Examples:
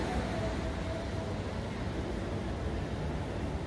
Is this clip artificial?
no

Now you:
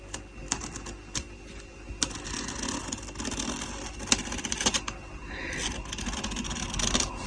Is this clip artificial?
no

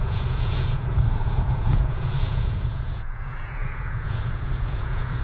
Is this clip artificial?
yes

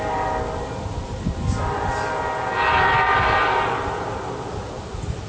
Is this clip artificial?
no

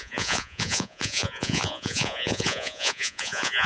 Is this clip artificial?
yes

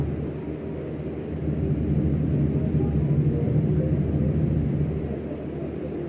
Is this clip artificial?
no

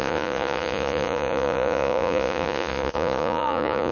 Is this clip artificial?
yes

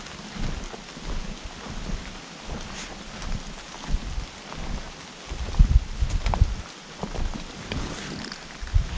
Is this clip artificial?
no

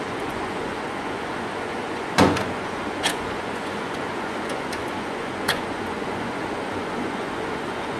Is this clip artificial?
yes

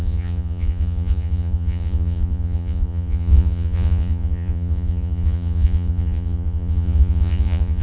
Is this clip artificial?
yes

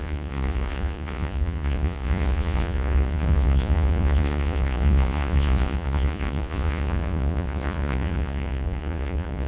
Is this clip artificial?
yes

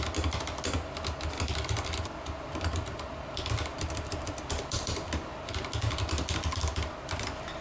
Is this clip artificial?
no